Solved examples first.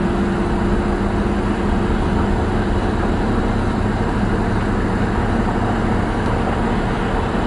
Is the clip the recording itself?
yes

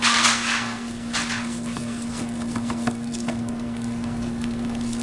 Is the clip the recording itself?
no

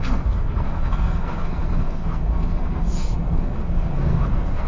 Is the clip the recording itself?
no